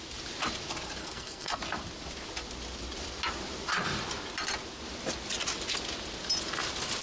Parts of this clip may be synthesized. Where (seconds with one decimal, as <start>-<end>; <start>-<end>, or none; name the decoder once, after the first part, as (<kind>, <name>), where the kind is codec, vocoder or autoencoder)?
1.0-1.6 (codec, SNAC)